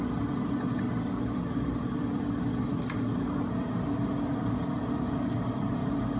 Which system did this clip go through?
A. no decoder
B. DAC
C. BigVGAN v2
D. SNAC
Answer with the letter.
A